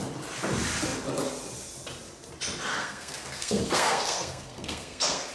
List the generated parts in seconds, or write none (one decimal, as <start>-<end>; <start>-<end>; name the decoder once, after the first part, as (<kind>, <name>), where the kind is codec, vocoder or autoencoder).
2.7-5.3 (codec, SNAC)